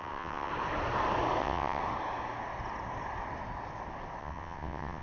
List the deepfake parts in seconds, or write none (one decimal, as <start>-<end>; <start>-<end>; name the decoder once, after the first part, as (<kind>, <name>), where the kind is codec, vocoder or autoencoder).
0.0-0.5 (vocoder, WaveNeXt); 1.4-1.8; 4.2-5.0